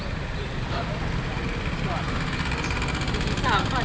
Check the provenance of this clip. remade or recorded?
recorded